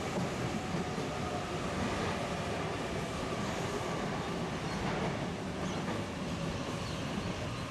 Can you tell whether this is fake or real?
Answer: real